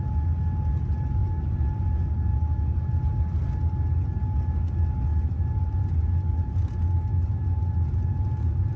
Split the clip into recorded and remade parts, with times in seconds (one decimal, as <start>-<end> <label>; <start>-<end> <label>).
0.0-1.2 recorded; 1.2-1.8 remade; 1.8-5.1 recorded; 5.1-7.7 remade; 7.7-8.1 recorded; 8.1-8.8 remade